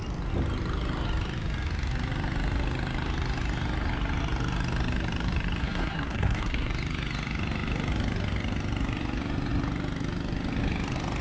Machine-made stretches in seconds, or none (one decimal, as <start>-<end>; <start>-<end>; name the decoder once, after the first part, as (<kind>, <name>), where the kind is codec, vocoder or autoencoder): 5.6-6.7 (codec, SNAC)